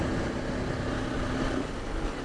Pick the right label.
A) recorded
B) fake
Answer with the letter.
A